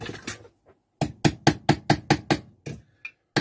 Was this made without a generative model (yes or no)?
yes